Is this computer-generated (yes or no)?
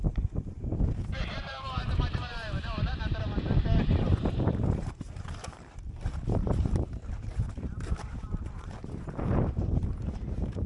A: yes